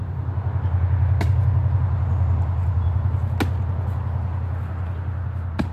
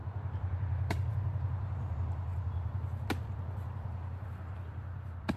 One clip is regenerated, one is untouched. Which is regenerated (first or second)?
second